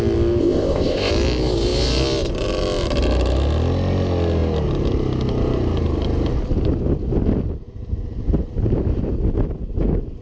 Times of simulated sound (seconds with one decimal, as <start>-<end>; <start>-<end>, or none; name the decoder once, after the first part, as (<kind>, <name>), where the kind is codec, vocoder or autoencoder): 0.4-1.1 (codec, ZipCodec)